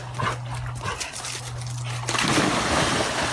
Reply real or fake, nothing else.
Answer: real